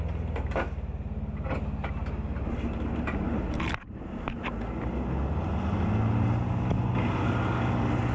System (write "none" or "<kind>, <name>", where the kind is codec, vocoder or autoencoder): none